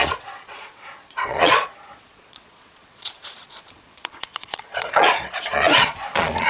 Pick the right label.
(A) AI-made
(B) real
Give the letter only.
A